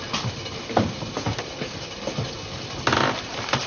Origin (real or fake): real